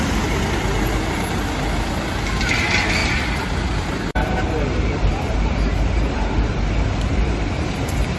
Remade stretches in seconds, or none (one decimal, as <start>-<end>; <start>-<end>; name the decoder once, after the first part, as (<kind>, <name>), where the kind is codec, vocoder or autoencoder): 3.0-8.2 (vocoder, BigVGAN v2)